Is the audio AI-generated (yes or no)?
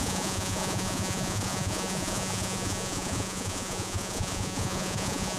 yes